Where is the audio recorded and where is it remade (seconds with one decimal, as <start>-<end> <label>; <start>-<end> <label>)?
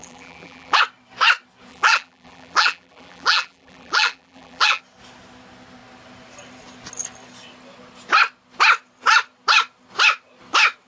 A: 0.0-0.8 remade; 0.8-1.7 recorded; 1.7-4.8 remade; 4.8-10.9 recorded